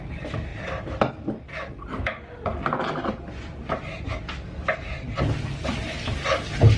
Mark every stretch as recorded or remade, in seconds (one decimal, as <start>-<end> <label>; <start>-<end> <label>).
0.0-0.5 recorded; 0.5-1.1 remade; 1.1-6.8 recorded